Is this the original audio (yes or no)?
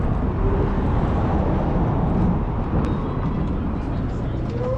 yes